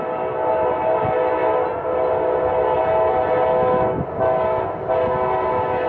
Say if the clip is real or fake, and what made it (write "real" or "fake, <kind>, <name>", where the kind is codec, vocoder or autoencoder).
real